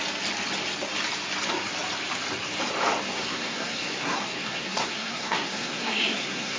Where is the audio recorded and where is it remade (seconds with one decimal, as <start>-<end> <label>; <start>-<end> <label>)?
0.0-3.1 recorded; 3.1-6.6 remade